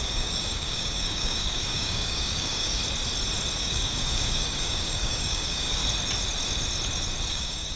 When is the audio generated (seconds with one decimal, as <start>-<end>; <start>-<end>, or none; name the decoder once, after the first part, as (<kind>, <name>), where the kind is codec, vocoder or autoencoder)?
0.0-2.8 (codec, DAC); 3.6-5.8; 7.3-7.8

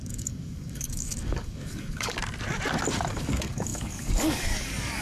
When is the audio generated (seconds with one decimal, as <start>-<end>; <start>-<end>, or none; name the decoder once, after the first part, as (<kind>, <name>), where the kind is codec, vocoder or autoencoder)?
0.0-2.2 (codec, DAC); 3.1-5.0